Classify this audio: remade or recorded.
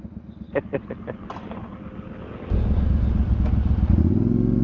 recorded